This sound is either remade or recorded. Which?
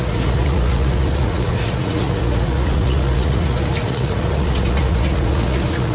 remade